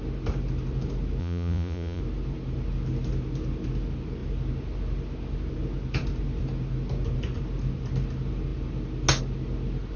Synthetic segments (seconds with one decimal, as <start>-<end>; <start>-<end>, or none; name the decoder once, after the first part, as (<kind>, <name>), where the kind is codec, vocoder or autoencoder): 1.2-2.0 (vocoder, Vocos)